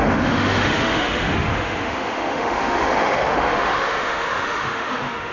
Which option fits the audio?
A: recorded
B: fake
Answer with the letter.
B